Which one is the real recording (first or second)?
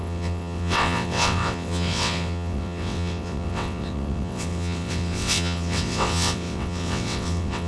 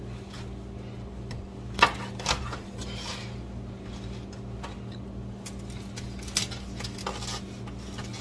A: second